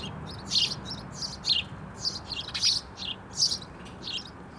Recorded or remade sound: recorded